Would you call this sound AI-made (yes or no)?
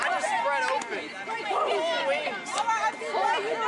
no